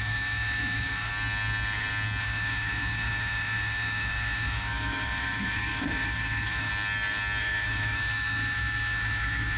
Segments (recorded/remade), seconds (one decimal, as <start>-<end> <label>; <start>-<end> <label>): 0.0-1.1 remade; 1.1-2.2 recorded; 2.2-6.7 remade; 6.7-7.4 recorded; 7.4-9.6 remade